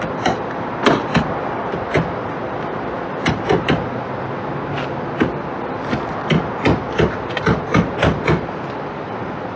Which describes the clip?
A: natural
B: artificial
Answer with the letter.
A